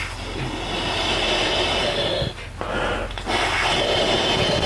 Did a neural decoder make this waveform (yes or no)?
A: no